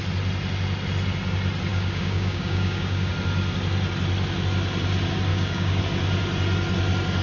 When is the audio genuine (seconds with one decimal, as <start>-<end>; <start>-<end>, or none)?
0.0-1.7; 3.1-5.3; 5.8-7.2